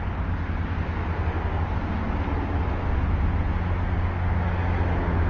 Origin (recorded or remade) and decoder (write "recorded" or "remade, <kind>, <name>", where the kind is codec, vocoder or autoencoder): recorded